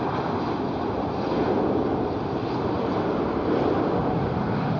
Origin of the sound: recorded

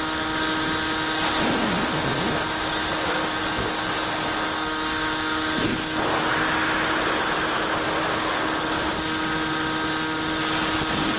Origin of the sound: recorded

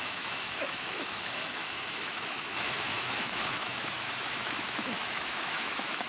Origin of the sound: remade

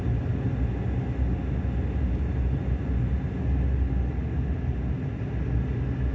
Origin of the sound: recorded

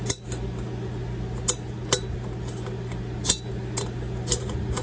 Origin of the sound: recorded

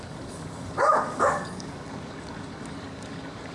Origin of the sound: remade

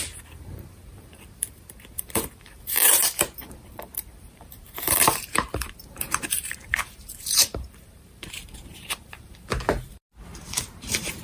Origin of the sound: remade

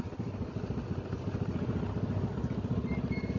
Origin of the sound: recorded